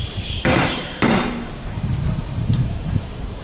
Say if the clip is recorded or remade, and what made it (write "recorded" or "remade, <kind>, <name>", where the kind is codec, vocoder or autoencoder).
remade, vocoder, BigVGAN v2